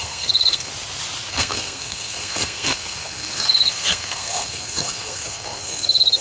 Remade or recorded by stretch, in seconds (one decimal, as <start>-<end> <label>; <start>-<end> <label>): 0.0-0.7 remade; 0.7-1.3 recorded; 1.3-6.2 remade